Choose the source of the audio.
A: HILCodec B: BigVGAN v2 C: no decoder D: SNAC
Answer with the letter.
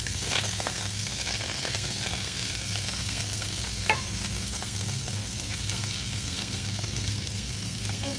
D